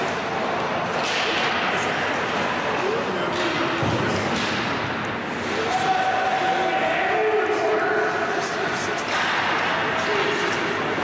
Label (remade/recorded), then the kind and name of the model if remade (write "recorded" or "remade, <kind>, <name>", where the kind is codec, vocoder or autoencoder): recorded